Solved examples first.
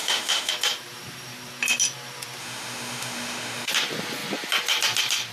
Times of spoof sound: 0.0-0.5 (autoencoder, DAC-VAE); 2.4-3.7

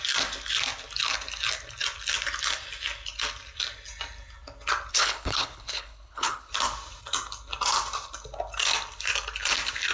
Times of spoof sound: 4.9-6.5 (codec, HILCodec)

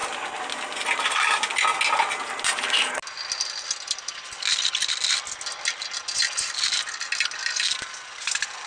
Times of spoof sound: none

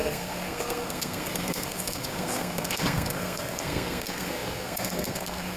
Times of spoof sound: 0.0-5.6 (codec, SNAC)

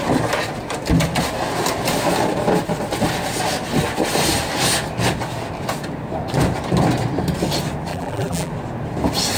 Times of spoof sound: 7.9-8.5 (vocoder, BigVGAN v2)

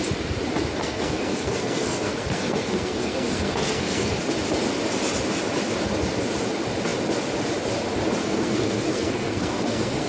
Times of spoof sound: 0.8-4.1 (codec, SNAC); 8.2-10.1

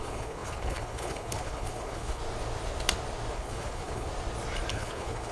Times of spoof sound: 0.0-2.2 (codec, HILCodec); 3.3-4.1; 4.7-5.3